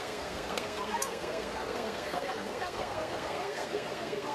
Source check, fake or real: fake